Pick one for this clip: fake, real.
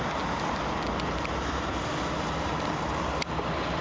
real